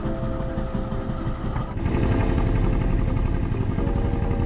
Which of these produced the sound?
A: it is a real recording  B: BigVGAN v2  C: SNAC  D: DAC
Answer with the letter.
A